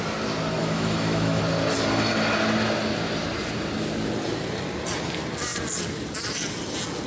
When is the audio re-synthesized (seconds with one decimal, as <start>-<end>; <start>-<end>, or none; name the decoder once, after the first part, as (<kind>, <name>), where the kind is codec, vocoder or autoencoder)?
0.6-1.4 (autoencoder, DAC-VAE)